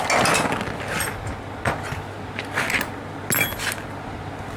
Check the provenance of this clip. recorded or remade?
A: recorded